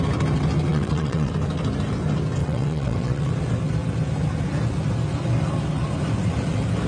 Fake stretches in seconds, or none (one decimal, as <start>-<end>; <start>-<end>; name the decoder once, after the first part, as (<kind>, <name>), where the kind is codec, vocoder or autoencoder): 0.7-1.3 (vocoder, WaveNeXt); 2.4-3.3